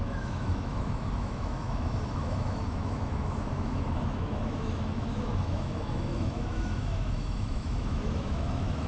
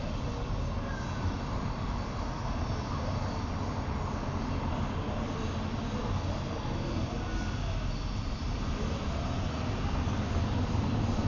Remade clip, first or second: first